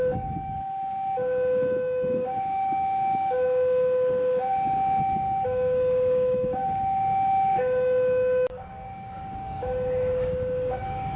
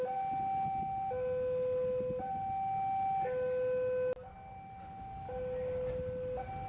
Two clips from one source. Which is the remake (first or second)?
first